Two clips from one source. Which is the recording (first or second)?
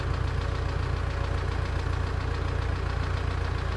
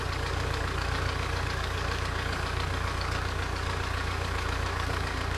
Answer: first